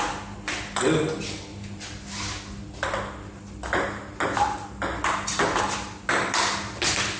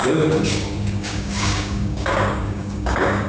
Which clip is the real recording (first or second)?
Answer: first